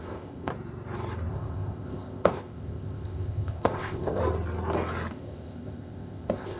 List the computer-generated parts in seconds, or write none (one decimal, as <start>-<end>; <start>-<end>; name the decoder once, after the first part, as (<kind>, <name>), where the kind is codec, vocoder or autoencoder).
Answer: 0.0-0.5 (codec, ZipCodec); 1.3-4.2; 5.1-6.6

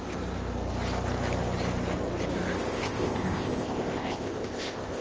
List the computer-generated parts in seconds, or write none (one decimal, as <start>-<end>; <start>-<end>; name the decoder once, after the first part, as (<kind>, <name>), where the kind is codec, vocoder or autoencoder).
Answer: 2.7-5.0 (codec, ZipCodec)